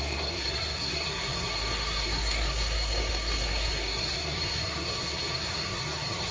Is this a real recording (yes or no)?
no